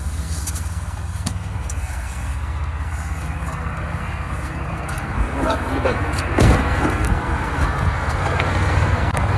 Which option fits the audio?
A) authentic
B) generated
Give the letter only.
B